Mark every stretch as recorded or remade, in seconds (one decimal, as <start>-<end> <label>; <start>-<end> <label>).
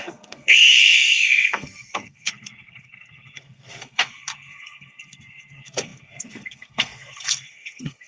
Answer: 0.0-8.1 remade